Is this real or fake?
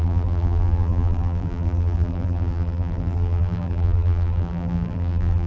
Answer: fake